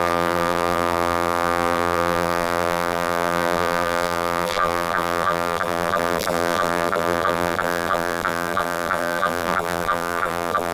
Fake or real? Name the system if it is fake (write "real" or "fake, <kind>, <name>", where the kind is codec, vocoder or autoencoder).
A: fake, vocoder, BigVGAN v2